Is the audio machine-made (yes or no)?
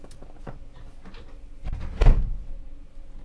no